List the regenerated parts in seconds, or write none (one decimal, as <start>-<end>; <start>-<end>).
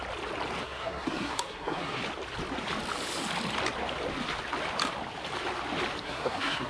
0.6-2.0; 6.0-6.7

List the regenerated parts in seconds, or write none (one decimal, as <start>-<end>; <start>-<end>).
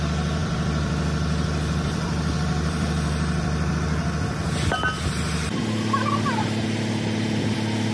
0.4-3.7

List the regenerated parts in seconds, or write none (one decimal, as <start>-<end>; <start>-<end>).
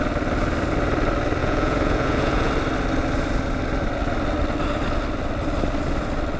1.4-2.5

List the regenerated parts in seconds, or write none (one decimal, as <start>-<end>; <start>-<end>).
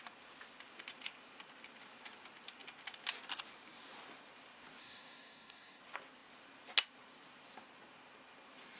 4.8-5.8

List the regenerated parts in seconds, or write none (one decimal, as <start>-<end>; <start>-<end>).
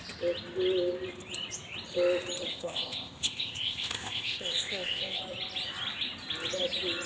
2.5-5.2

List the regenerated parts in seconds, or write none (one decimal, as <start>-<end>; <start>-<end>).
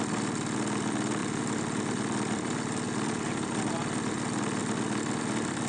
1.2-4.1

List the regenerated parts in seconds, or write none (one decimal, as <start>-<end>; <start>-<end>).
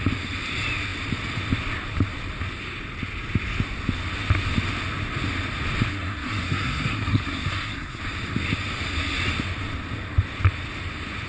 5.9-8.0